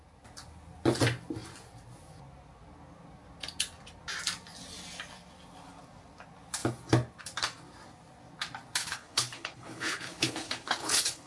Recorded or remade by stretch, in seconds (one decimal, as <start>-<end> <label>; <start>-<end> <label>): 0.0-8.8 recorded; 8.8-11.3 remade